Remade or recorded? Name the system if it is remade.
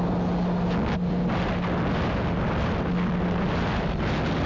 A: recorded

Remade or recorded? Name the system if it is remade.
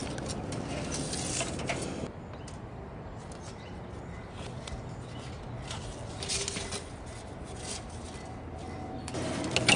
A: recorded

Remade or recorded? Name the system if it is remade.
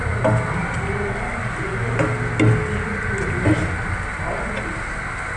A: recorded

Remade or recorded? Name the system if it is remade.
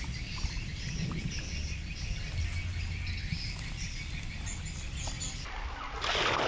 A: recorded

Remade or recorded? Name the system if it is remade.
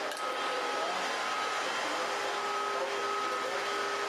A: recorded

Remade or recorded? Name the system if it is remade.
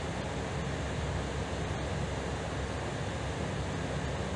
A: recorded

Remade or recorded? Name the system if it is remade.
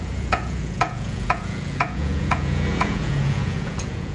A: remade, vocoder, Vocos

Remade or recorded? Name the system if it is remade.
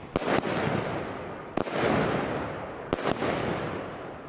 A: recorded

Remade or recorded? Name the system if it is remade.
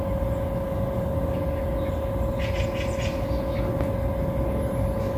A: recorded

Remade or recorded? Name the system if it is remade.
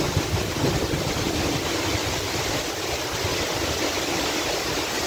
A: recorded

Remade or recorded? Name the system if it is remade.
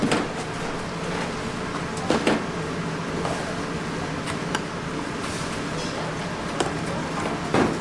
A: recorded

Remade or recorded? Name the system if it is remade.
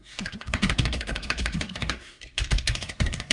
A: remade, codec, SNAC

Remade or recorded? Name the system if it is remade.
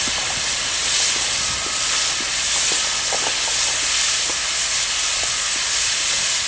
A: recorded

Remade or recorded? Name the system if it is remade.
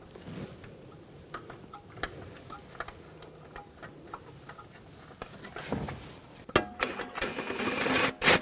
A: recorded